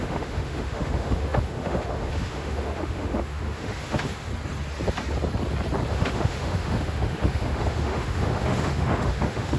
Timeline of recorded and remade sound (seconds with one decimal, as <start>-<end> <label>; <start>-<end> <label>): 0.0-4.3 remade; 4.3-5.9 recorded; 5.9-9.6 remade